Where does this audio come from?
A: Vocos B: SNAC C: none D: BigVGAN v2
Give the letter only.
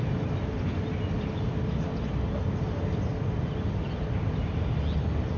C